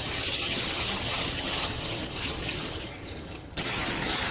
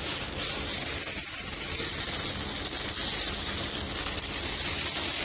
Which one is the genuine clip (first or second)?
second